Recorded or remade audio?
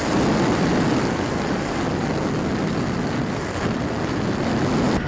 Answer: recorded